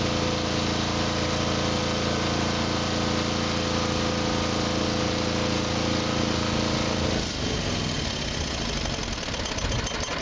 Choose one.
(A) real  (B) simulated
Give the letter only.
A